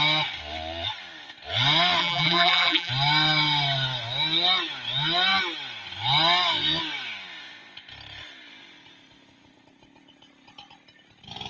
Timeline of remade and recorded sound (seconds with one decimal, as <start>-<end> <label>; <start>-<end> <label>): 0.0-2.0 recorded; 2.0-2.9 remade; 2.9-11.5 recorded